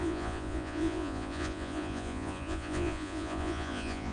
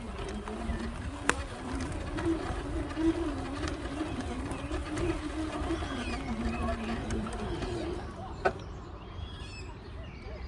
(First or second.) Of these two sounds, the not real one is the first